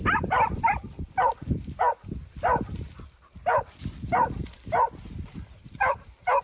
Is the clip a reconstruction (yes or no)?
yes